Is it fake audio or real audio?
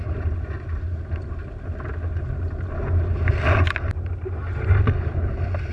real